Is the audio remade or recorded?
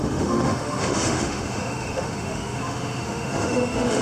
remade